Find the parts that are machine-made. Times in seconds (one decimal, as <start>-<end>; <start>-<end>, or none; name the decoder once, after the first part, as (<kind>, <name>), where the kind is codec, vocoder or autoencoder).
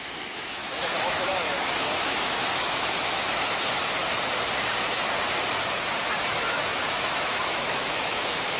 0.0-4.0 (autoencoder, DAC-VAE); 6.3-8.6